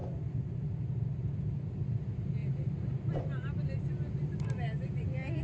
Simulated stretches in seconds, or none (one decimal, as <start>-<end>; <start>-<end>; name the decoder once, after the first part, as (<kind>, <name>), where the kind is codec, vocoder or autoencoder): 0.0-1.7 (vocoder, BigVGAN v2)